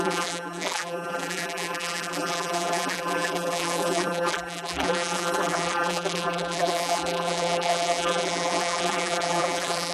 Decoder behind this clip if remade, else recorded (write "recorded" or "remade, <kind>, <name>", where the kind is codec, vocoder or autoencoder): remade, vocoder, BigVGAN v2